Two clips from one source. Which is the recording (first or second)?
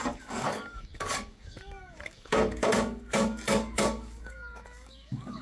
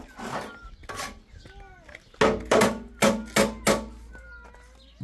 second